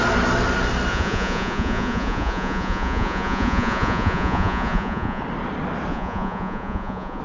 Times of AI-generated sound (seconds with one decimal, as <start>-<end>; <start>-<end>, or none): 0.9-5.2; 5.9-7.2